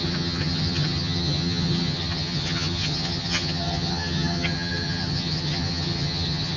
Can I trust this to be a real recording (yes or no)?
no